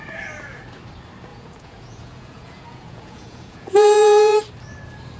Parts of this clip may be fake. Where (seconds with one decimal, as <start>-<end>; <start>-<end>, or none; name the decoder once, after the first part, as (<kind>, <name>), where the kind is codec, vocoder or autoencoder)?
1.3-4.4 (vocoder, Vocos)